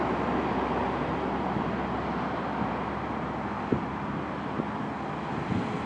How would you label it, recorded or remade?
recorded